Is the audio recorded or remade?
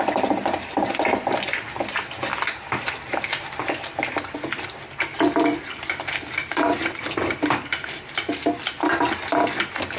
recorded